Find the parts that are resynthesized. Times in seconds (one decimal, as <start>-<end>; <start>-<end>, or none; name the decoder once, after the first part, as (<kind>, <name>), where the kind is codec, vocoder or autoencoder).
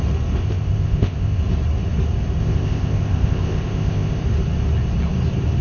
0.4-1.4 (codec, ZipCodec); 2.4-4.2